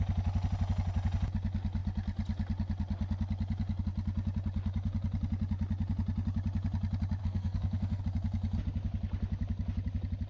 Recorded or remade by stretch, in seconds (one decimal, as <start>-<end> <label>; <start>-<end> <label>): 0.0-7.2 recorded; 7.2-8.0 remade; 8.0-10.3 recorded